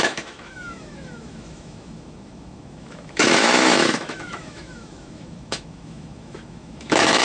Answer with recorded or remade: remade